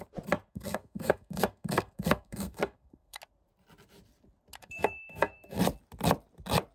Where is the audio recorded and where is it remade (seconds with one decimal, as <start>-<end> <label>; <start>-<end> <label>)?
0.0-0.5 recorded; 0.5-3.2 remade; 3.2-4.6 recorded; 4.6-5.6 remade; 5.6-6.7 recorded